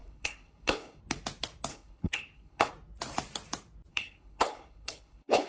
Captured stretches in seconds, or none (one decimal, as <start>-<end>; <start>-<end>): 1.0-1.7; 2.7-3.9